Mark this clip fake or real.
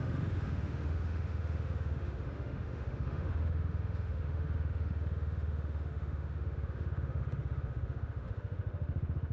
fake